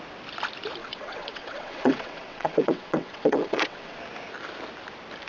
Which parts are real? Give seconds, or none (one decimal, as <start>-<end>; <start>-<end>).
0.0-0.8; 4.0-5.3